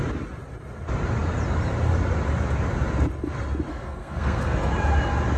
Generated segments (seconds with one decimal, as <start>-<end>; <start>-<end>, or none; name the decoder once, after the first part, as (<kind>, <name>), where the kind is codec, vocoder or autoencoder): 3.7-4.7 (codec, SNAC)